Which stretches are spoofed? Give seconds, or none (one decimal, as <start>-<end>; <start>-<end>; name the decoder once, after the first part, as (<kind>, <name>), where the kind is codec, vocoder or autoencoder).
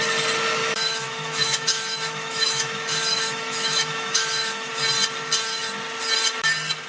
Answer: 0.6-4.7 (autoencoder, DAC-VAE)